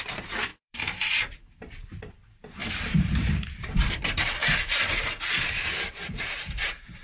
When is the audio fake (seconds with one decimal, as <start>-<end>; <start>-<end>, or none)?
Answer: 0.0-7.0